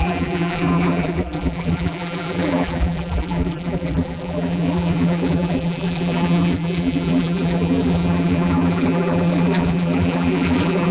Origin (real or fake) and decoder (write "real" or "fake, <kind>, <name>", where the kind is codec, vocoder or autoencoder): fake, vocoder, BigVGAN v2